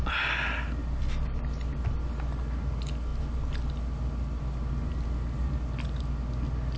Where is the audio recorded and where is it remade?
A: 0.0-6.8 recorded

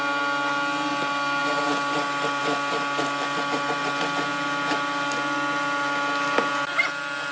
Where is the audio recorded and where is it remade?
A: 0.0-7.3 recorded